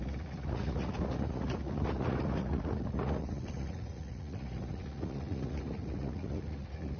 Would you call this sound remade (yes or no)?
yes